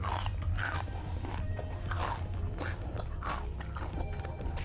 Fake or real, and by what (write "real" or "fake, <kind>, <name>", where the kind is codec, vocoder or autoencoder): real